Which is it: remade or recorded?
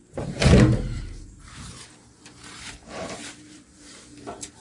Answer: remade